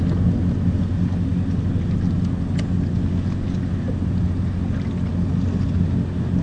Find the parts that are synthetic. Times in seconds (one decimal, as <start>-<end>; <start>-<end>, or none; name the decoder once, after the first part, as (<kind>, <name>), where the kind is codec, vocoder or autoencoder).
none